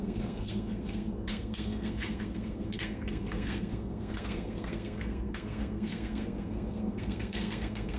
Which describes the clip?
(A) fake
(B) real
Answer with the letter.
A